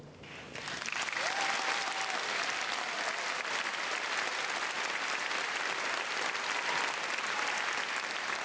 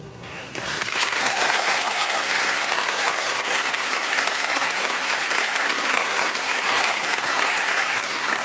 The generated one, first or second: second